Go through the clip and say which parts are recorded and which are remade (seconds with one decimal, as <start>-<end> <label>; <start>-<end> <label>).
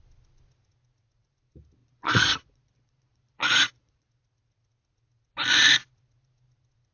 0.0-1.8 recorded; 1.8-4.1 remade; 4.1-6.9 recorded